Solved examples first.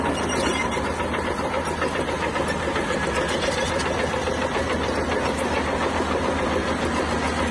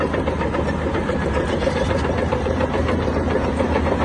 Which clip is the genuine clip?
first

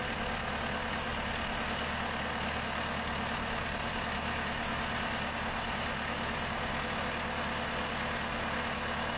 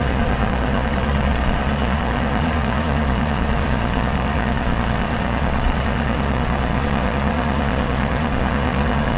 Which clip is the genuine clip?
first